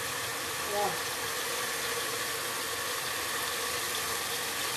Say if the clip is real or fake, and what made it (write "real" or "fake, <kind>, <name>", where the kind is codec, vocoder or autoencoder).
fake, vocoder, BigVGAN v2